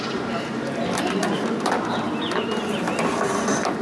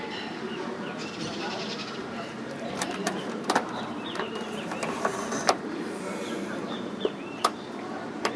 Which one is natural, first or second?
first